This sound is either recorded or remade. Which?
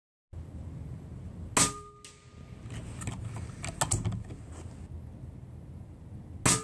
recorded